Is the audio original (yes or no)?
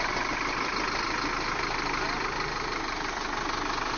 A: no